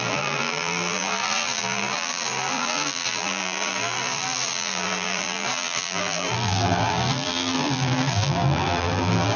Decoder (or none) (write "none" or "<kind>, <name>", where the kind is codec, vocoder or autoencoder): vocoder, BigVGAN v2